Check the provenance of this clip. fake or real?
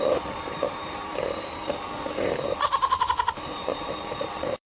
fake